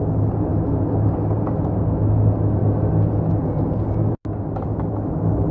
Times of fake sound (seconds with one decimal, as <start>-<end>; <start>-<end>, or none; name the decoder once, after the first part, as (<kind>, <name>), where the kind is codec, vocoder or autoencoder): none